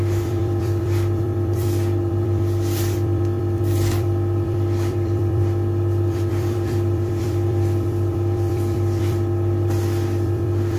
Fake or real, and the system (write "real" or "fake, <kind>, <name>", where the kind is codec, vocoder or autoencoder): fake, vocoder, BigVGAN v2